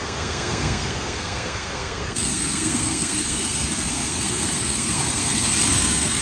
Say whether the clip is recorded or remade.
remade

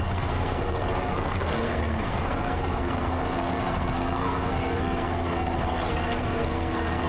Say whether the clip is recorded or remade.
remade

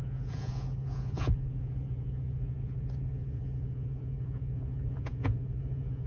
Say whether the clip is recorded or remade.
remade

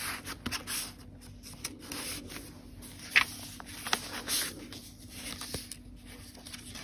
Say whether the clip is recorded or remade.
recorded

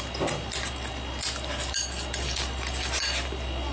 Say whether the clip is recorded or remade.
recorded